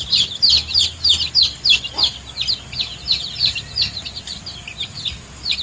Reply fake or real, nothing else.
real